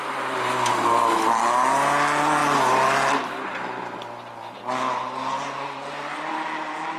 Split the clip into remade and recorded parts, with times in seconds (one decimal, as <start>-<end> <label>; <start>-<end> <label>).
0.0-7.0 recorded